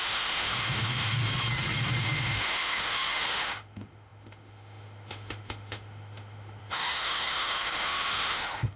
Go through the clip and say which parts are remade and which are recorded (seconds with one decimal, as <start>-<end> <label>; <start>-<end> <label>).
0.0-1.2 remade; 1.2-2.0 recorded; 2.0-8.8 remade